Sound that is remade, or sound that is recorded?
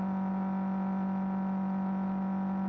recorded